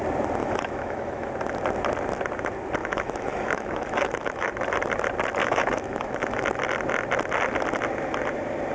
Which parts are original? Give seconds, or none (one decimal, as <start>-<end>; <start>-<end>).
0.0-0.4; 1.3-2.8; 4.5-5.4; 6.4-8.7